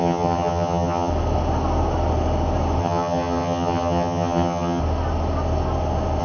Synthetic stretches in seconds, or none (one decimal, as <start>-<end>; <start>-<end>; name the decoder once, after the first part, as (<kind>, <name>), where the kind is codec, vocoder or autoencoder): 0.0-1.1 (vocoder, HiFi-GAN); 2.8-4.8

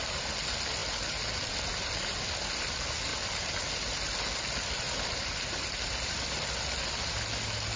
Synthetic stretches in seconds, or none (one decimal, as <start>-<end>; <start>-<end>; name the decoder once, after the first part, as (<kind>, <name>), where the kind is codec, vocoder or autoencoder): none

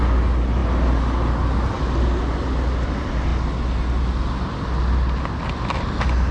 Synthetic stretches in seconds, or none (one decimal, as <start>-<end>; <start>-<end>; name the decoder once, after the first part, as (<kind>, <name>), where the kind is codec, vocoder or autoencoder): none

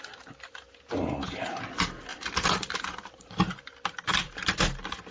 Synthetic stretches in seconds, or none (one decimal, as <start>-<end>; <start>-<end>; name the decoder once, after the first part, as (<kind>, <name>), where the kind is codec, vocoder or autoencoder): 2.1-4.3 (vocoder, BigVGAN v2)

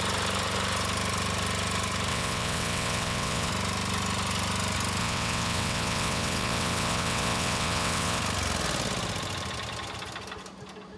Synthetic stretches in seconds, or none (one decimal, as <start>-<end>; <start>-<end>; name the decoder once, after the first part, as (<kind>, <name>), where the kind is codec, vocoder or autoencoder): 2.1-3.5 (vocoder, WaveNeXt); 5.0-8.2

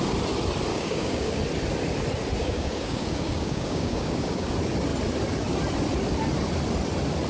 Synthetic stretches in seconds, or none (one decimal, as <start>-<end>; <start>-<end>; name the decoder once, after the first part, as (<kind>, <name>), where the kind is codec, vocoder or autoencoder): 0.7-1.3 (codec, DAC); 2.4-4.5

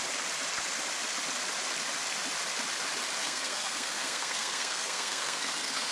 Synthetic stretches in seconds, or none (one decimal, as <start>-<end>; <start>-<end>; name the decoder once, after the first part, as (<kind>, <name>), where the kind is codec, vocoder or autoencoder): 3.2-5.9 (codec, SNAC)